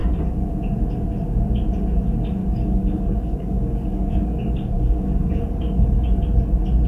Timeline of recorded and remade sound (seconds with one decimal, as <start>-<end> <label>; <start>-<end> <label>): 0.0-2.4 recorded; 2.4-6.2 remade; 6.2-6.9 recorded